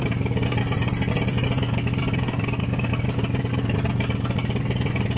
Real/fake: real